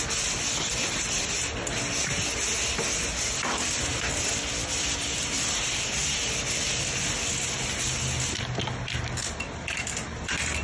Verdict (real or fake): real